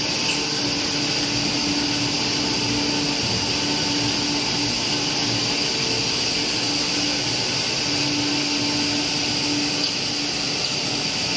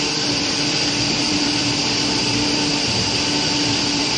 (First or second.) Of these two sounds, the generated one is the second